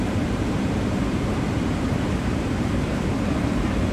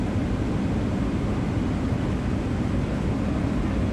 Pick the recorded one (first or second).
second